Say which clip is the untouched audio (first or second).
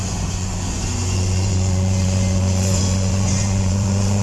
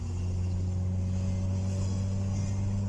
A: second